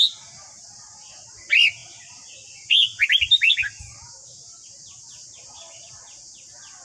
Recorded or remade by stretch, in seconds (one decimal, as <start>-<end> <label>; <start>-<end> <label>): 0.0-6.8 recorded